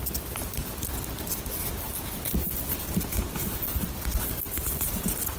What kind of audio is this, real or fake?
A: real